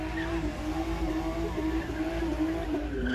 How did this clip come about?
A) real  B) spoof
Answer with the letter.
B